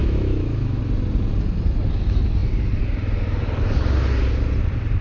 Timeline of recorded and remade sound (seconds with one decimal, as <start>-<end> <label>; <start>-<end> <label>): 0.0-0.8 remade; 0.8-5.0 recorded